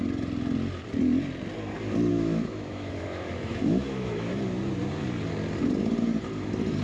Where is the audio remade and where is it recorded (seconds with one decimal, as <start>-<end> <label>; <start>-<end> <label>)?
0.0-2.1 recorded; 2.1-4.4 remade; 4.4-6.8 recorded